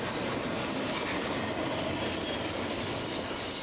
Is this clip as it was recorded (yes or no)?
yes